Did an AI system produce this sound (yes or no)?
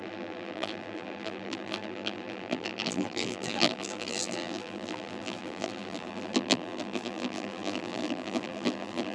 yes